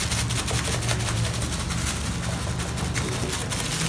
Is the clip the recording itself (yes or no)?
yes